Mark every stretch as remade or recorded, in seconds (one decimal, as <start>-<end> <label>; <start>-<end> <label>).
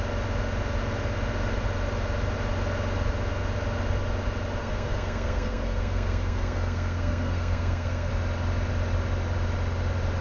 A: 0.0-4.6 recorded; 4.6-8.1 remade; 8.1-10.2 recorded